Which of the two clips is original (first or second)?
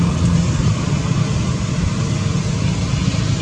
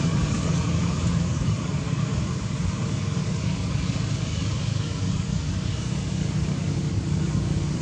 first